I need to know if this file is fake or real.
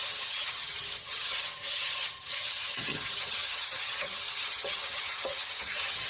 fake